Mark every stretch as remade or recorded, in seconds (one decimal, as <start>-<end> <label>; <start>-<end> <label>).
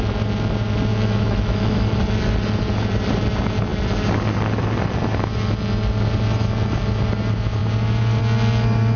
0.0-0.9 recorded; 0.9-2.0 remade; 2.0-9.0 recorded